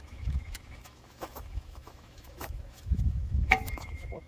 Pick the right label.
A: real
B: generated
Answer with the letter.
B